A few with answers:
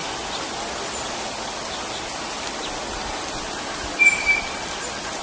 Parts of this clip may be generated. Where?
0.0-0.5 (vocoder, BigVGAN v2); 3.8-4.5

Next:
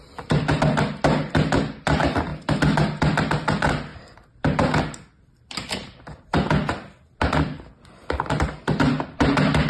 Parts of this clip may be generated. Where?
none

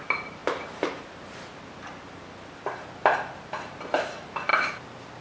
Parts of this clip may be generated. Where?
none

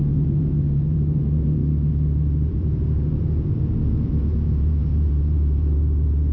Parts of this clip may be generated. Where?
0.0-1.6 (vocoder, Vocos); 2.5-6.3

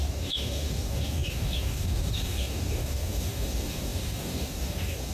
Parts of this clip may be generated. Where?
0.0-5.1 (codec, DAC)